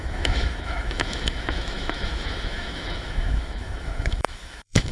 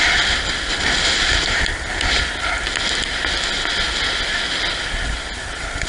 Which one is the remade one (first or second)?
first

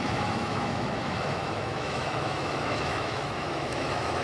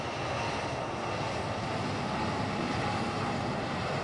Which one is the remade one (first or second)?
first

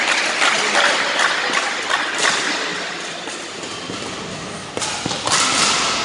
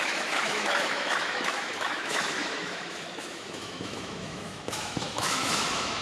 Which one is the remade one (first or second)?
second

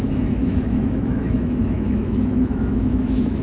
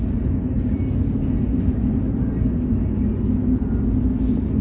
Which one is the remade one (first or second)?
first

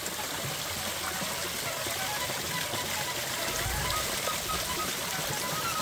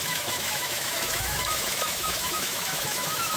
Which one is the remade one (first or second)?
second